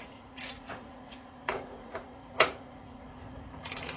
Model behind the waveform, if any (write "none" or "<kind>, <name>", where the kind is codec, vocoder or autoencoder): vocoder, Vocos